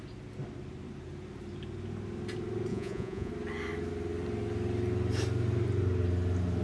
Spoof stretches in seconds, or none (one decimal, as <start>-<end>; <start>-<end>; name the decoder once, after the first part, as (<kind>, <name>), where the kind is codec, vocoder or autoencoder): 2.7-3.3 (vocoder, Vocos)